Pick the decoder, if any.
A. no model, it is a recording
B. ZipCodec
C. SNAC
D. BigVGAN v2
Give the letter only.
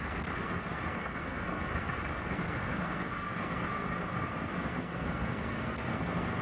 C